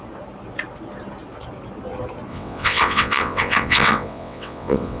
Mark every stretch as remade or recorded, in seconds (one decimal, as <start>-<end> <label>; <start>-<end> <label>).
0.0-2.3 recorded; 2.3-5.0 remade